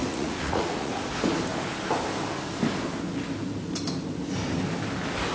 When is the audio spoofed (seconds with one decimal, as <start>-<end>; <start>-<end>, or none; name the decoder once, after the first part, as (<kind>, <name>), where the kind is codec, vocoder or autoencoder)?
0.0-1.1 (vocoder, Vocos)